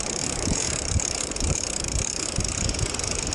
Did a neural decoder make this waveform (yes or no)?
yes